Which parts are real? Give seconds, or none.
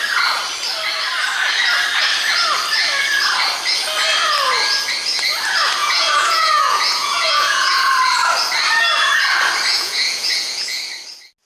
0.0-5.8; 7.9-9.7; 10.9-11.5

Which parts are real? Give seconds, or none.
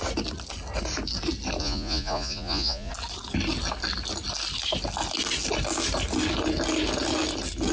0.0-1.6; 2.9-7.7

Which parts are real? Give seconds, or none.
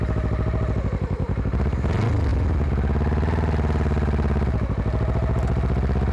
0.0-6.1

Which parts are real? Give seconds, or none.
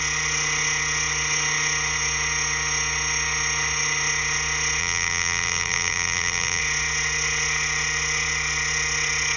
0.0-4.8; 6.6-9.4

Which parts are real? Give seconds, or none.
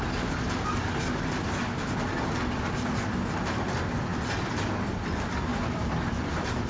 0.0-6.7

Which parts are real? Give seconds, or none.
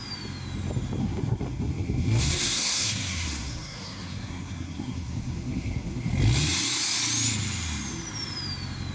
0.0-1.0; 6.1-8.9